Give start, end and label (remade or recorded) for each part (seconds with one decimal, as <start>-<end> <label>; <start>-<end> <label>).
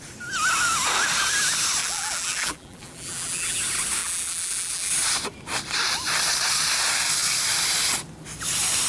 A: 0.0-1.8 recorded; 1.8-3.6 remade; 3.6-4.0 recorded; 4.0-4.9 remade; 4.9-8.9 recorded